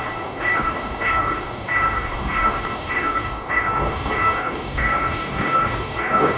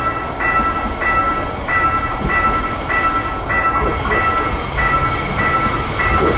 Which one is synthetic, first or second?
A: first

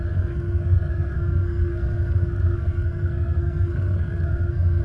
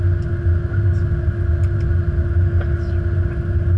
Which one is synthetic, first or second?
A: first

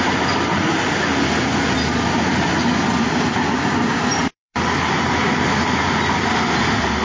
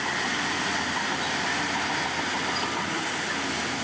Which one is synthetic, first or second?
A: first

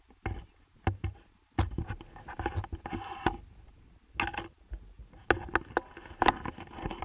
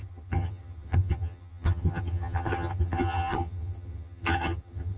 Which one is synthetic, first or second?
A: second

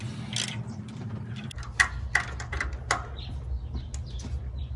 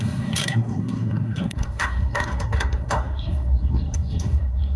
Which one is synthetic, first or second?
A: second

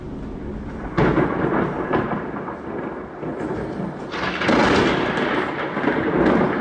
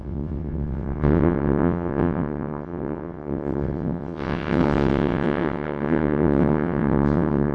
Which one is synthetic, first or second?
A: second